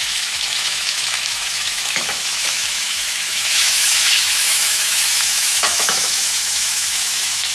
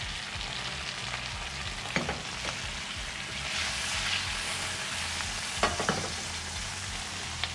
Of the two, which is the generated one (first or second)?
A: first